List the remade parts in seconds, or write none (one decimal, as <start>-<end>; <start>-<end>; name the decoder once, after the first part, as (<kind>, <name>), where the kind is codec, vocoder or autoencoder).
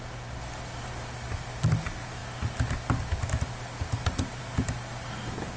none